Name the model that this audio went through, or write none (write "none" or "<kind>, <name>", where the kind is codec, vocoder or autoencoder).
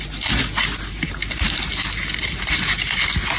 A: none